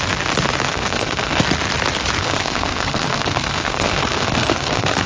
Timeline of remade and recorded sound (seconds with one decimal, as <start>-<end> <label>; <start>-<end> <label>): 0.0-0.7 recorded; 0.7-1.4 remade; 1.4-2.2 recorded; 2.2-5.1 remade